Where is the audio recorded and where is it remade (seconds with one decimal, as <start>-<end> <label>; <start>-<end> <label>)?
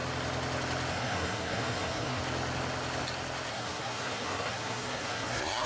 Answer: 0.0-0.9 recorded; 0.9-2.2 remade; 2.2-3.5 recorded; 3.5-5.7 remade